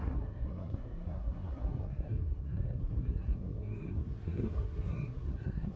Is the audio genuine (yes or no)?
no